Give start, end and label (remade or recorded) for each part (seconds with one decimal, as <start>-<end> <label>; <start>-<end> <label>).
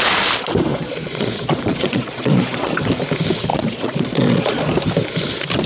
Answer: 0.0-0.7 recorded; 0.7-2.7 remade; 2.7-3.5 recorded; 3.5-4.6 remade; 4.6-5.7 recorded